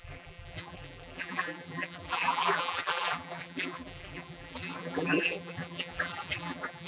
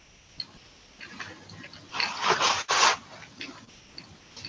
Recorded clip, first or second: second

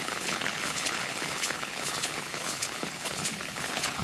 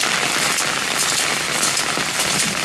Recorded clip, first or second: second